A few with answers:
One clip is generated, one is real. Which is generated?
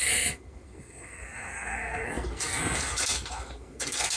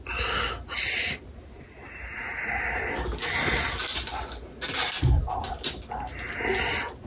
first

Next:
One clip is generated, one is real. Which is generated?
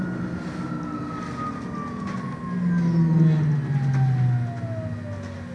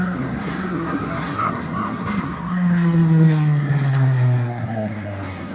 second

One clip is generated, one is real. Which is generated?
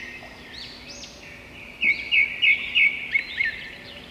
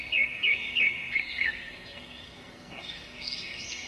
second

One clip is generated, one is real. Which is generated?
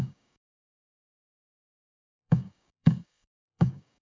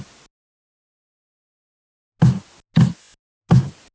first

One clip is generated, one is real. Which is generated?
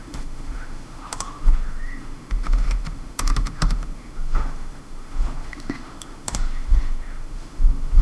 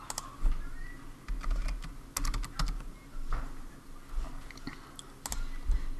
first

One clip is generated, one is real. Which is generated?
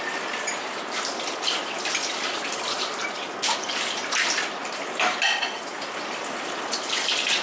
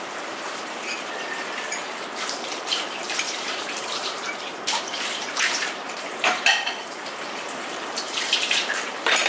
second